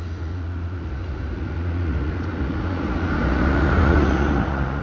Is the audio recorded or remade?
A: remade